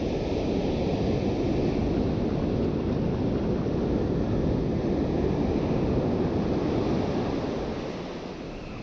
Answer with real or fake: real